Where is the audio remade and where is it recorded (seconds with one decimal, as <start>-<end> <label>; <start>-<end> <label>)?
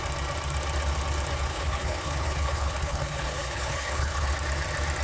0.0-1.5 recorded; 1.5-4.3 remade; 4.3-5.0 recorded